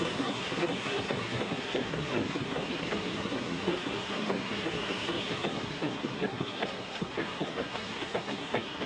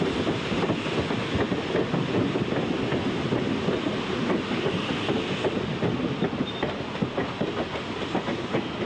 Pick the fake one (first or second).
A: first